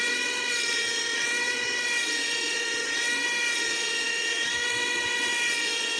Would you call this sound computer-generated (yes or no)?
yes